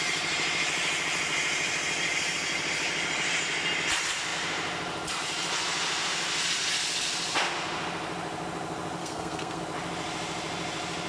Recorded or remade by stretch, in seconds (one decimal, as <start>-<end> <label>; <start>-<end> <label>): 0.0-9.0 recorded; 9.0-9.6 remade; 9.6-11.1 recorded